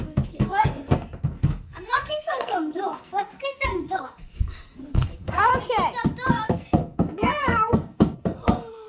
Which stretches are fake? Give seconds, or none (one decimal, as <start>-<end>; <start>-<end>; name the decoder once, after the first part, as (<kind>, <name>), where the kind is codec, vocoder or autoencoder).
0.0-5.5 (codec, SNAC); 6.3-8.9